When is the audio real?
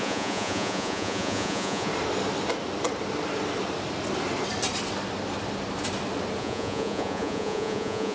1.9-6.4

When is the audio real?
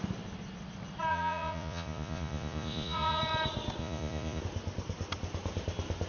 0.0-1.1; 3.2-3.8; 4.4-6.1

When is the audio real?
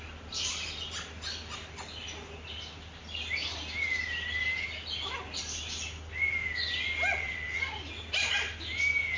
0.0-7.1; 7.6-9.2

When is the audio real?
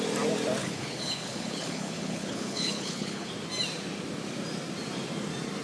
0.0-0.6; 3.3-5.6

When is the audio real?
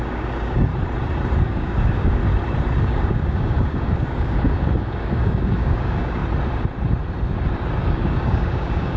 0.7-1.4; 2.2-2.8; 6.2-7.8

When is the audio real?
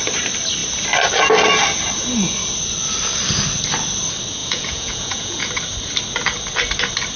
0.0-4.4; 5.5-7.2